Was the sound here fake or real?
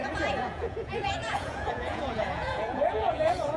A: fake